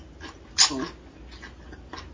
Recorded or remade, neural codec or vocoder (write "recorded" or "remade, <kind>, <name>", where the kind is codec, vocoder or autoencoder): recorded